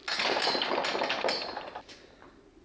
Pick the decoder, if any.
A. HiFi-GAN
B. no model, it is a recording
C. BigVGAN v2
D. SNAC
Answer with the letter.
B